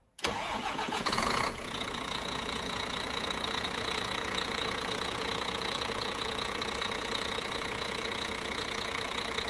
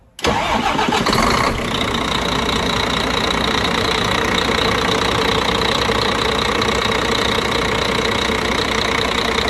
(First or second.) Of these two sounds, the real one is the second